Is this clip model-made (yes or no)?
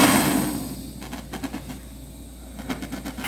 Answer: no